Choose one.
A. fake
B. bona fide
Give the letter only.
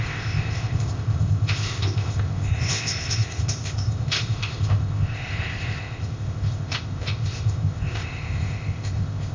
A